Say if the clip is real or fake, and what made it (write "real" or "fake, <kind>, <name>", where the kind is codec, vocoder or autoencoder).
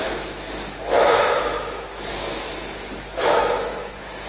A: fake, autoencoder, DAC-VAE